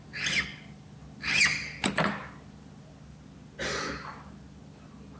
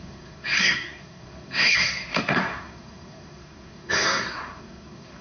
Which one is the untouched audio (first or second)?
first